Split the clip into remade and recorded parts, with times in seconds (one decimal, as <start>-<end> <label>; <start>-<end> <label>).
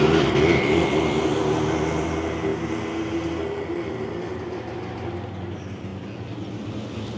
0.0-7.2 recorded